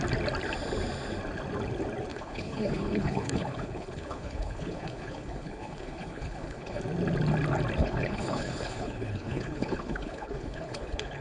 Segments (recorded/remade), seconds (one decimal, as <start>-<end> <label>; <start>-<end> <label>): 0.0-2.1 recorded; 2.1-6.8 remade; 6.8-7.8 recorded; 7.8-11.2 remade